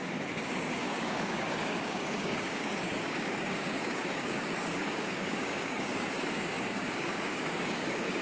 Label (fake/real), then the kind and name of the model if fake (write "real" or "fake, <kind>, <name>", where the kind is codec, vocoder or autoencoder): fake, codec, DAC